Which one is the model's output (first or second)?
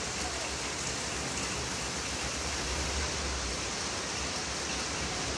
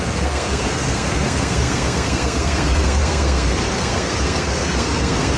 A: second